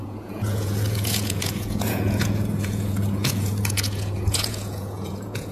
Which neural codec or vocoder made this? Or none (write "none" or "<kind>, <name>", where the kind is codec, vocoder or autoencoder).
vocoder, Vocos